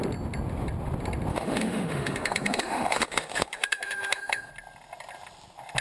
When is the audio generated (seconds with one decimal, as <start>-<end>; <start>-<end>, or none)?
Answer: 1.3-4.5

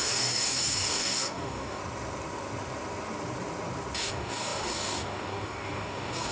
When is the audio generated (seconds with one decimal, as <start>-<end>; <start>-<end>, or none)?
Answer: 0.0-1.8; 4.0-6.3

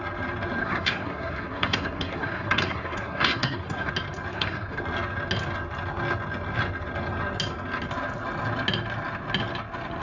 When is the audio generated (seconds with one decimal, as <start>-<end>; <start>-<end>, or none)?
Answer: 0.6-3.9; 4.3-4.8

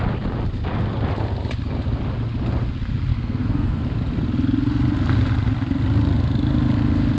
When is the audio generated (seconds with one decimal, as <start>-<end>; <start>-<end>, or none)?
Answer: 3.1-3.8

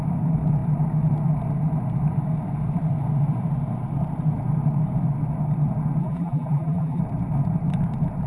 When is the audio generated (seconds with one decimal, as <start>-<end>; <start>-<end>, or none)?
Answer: 6.0-7.0

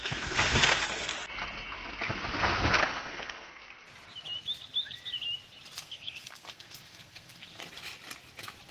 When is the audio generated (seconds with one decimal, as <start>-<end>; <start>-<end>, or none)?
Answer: 0.0-1.1; 2.8-3.6; 5.8-7.6

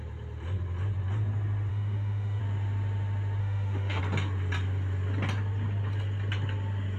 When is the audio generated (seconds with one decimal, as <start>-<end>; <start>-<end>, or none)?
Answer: 1.7-2.4; 3.4-4.0